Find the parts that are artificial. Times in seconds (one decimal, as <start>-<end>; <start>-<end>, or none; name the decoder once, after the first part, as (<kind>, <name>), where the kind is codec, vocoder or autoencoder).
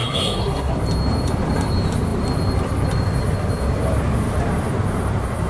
0.0-0.7 (codec, SNAC)